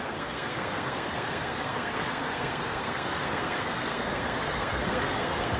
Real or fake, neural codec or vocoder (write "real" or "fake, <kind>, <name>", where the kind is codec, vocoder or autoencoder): fake, codec, SNAC